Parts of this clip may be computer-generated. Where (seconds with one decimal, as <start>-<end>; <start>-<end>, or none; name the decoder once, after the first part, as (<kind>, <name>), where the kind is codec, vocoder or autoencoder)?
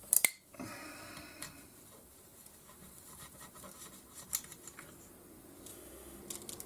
5.7-6.2 (autoencoder, DAC-VAE)